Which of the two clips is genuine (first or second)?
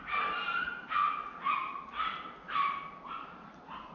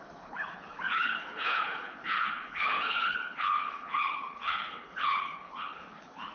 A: first